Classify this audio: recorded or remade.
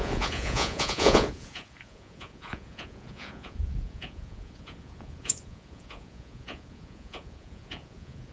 remade